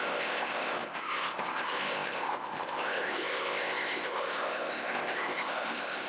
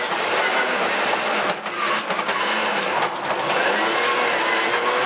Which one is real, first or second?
second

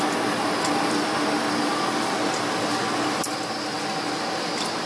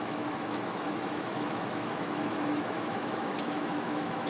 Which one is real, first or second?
first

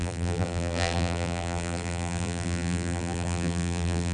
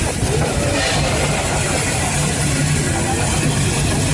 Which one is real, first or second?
second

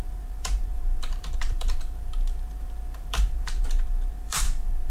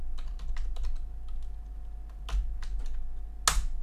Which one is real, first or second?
second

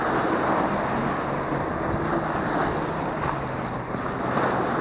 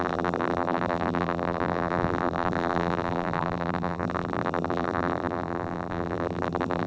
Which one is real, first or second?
first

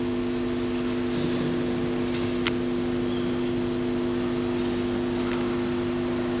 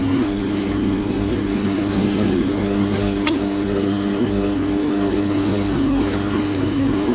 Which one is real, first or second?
first